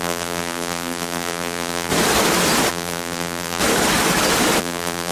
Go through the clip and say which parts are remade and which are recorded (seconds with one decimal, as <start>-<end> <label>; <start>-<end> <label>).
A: 0.0-1.9 remade; 1.9-2.7 recorded; 2.7-3.6 remade; 3.6-4.6 recorded; 4.6-5.1 remade